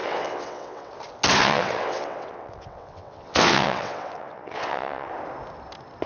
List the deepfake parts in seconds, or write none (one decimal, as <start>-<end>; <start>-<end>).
0.0-0.9; 1.4-5.1